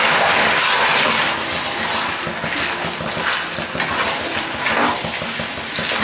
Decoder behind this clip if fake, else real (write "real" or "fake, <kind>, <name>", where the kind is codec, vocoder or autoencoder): real